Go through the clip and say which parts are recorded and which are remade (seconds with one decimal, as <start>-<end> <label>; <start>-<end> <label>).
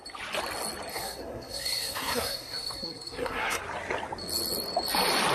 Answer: 0.0-0.9 recorded; 0.9-3.6 remade; 3.6-5.3 recorded